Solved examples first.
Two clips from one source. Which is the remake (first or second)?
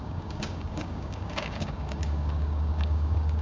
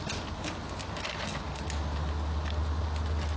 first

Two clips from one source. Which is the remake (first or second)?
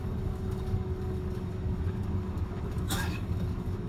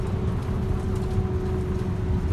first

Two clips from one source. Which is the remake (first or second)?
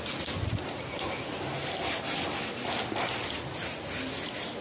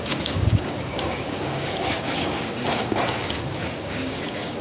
second